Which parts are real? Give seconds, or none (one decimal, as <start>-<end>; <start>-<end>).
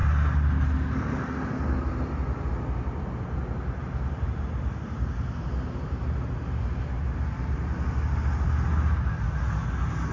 0.0-10.1